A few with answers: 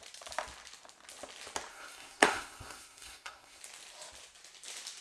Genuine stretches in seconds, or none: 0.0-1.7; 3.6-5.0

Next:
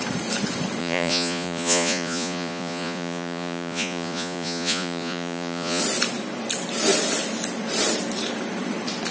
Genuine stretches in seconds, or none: 0.0-0.8; 5.8-9.1

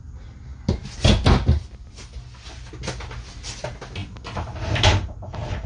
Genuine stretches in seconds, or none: 0.0-5.7